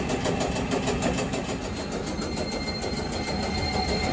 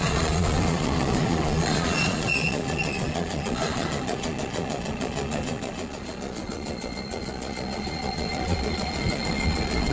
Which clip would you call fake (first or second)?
second